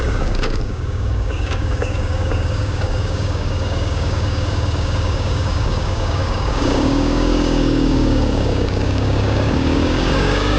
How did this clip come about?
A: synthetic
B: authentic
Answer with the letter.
A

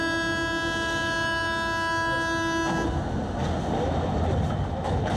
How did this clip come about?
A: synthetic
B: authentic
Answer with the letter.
B